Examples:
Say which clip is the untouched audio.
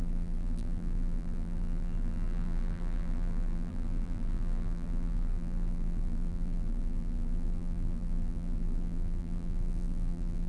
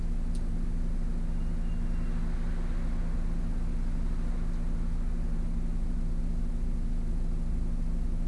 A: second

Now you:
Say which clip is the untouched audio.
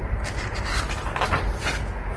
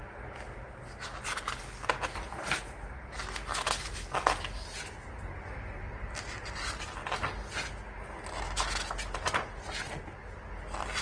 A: second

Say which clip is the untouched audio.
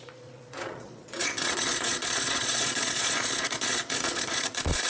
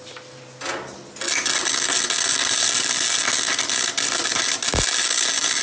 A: second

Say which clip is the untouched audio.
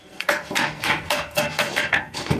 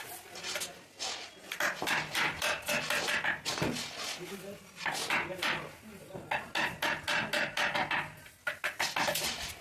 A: second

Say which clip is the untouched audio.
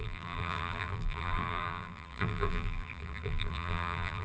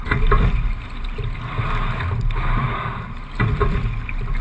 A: second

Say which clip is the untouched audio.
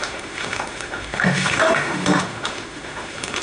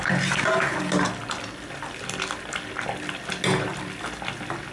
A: second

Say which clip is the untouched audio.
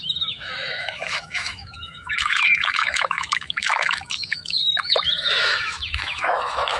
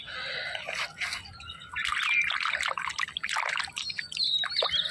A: second